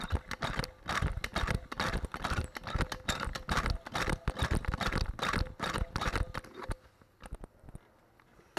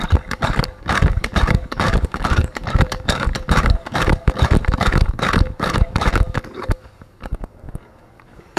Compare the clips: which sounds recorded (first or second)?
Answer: first